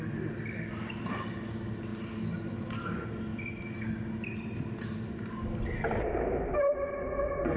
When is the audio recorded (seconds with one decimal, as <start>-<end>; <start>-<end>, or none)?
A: 0.0-7.6